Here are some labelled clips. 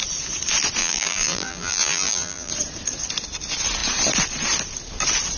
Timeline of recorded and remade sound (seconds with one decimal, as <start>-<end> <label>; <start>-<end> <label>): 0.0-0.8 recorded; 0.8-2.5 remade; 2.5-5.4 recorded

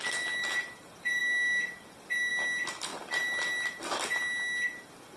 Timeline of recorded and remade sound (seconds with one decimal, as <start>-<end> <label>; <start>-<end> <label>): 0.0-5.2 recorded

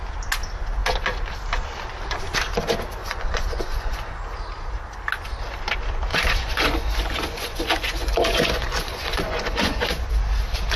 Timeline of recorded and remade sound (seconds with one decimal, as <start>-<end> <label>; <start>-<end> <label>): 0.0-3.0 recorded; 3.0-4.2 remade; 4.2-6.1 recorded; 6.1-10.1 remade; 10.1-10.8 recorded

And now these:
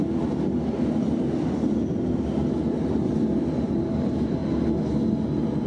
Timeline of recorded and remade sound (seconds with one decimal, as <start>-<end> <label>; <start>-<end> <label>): 0.0-5.7 recorded

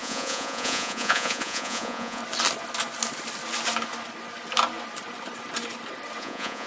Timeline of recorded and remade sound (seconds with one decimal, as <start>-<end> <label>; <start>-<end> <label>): 0.0-2.2 remade; 2.2-6.2 recorded; 6.2-6.7 remade

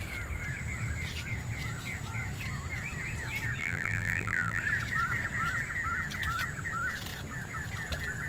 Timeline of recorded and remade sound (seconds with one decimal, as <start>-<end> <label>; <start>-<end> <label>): 0.0-3.6 recorded; 3.6-4.6 remade; 4.6-8.3 recorded

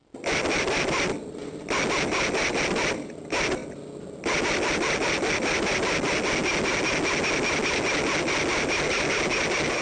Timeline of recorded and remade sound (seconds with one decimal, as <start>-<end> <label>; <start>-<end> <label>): 0.0-9.8 recorded